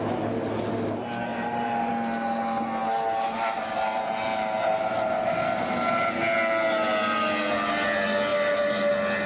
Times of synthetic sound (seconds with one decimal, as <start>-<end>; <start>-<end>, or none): 1.3-1.9; 8.3-8.9